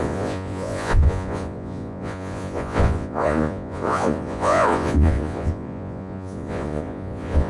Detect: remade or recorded remade